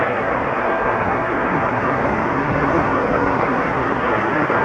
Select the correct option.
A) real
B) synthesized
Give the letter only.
B